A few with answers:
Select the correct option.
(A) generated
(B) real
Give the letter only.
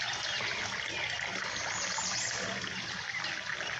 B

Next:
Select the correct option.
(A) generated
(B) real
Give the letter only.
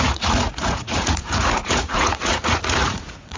A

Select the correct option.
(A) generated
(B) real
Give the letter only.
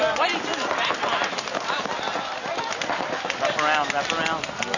B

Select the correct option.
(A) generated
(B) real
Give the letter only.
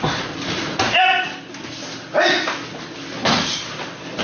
B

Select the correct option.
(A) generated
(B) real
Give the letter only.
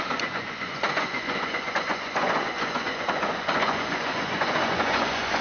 A